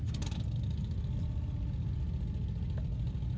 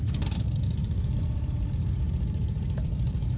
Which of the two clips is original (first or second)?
first